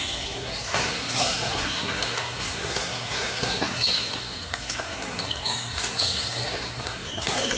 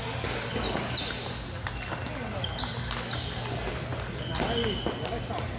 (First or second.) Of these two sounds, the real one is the second